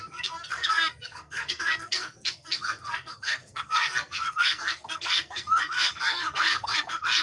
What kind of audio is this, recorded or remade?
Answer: remade